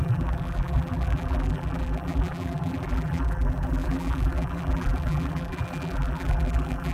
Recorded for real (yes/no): no